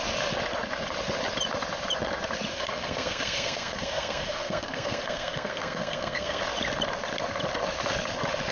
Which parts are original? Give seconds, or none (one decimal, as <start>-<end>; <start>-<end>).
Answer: 0.0-2.5; 6.4-8.5